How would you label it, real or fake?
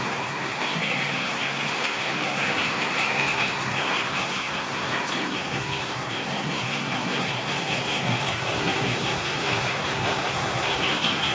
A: fake